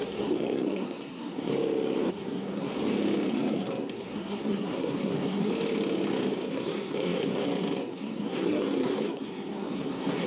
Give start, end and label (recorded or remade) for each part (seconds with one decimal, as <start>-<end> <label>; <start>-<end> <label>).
0.0-1.5 remade; 1.5-2.1 recorded; 2.1-2.7 remade; 2.7-3.3 recorded; 3.3-5.5 remade; 5.5-6.5 recorded; 6.5-10.3 remade